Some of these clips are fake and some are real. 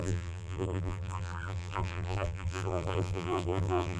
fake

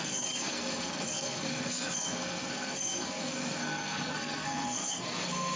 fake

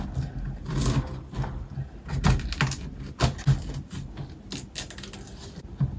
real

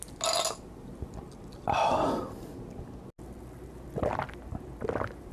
real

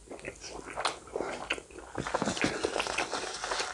real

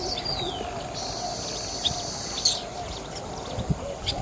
real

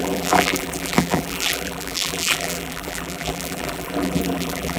fake